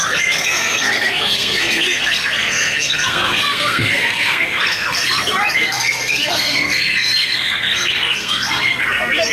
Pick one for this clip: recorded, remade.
remade